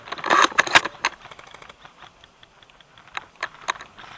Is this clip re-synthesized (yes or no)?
no